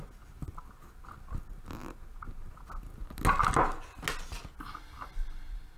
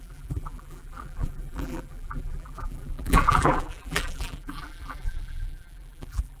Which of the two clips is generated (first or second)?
second